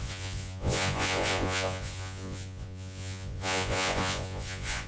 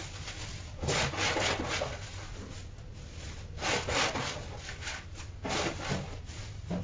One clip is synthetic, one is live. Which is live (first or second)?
second